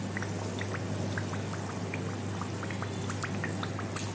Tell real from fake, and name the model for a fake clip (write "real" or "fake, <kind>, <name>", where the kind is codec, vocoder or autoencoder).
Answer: real